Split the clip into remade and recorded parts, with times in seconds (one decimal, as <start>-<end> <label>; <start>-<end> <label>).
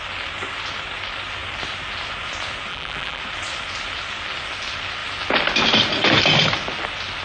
0.0-2.7 recorded; 2.7-3.2 remade; 3.2-7.2 recorded